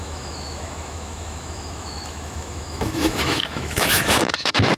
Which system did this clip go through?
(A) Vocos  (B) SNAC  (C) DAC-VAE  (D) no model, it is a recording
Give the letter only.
C